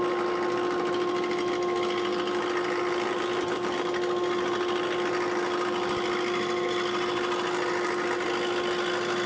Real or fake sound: real